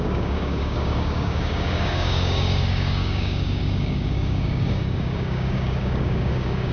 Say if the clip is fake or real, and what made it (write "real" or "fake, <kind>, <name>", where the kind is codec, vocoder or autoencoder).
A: fake, codec, DAC